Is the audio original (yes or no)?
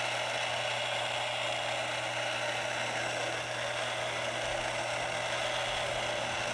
yes